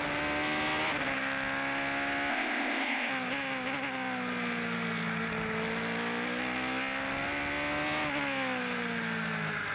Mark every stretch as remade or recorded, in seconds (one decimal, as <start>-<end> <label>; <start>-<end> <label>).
0.0-2.3 recorded; 2.3-3.1 remade; 3.1-9.7 recorded